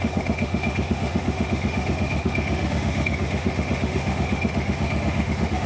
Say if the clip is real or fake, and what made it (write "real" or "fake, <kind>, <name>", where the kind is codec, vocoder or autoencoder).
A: fake, autoencoder, DAC-VAE